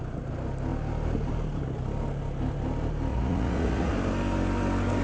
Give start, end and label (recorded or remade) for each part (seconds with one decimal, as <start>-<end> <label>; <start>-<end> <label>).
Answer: 0.0-3.1 recorded; 3.1-3.9 remade; 3.9-5.0 recorded